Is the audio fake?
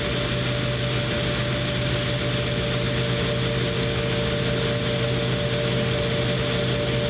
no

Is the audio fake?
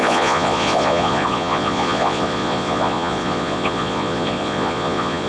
yes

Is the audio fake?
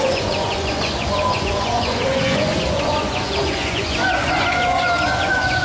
yes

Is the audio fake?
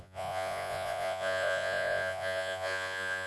yes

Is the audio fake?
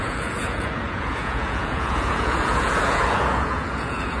yes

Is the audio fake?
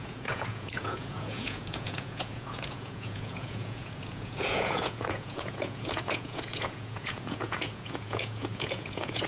yes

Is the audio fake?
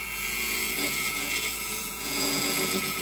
yes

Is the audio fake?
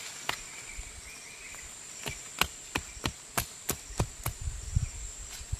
no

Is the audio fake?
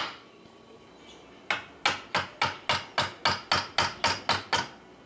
no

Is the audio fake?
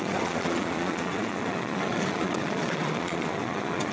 yes